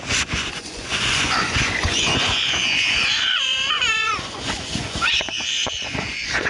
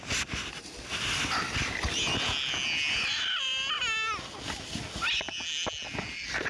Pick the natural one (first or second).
second